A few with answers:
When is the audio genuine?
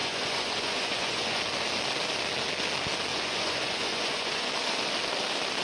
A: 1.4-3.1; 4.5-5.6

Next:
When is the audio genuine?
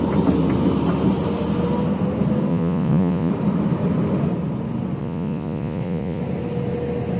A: 0.0-2.5; 3.3-5.0; 6.2-7.2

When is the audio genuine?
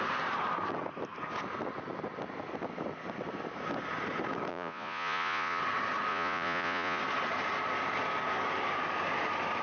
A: 0.0-4.5; 5.6-6.1; 7.0-9.6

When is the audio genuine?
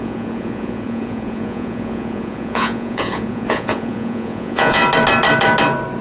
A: 4.8-6.0